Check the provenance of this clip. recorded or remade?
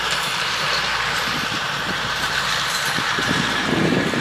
remade